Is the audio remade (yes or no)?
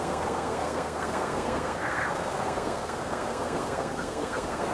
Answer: yes